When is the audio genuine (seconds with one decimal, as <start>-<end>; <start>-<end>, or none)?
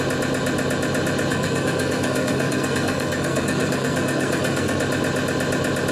0.0-1.3; 4.8-5.9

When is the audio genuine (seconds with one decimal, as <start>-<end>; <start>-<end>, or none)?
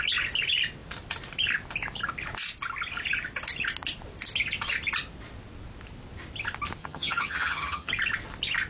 0.0-6.8; 7.9-8.7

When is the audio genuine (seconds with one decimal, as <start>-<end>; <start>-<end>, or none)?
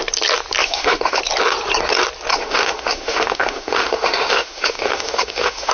0.0-0.6; 1.2-2.3